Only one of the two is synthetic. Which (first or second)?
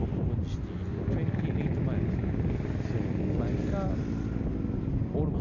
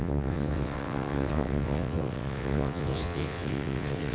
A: second